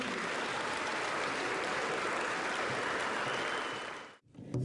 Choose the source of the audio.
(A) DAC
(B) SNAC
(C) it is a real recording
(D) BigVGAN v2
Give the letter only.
C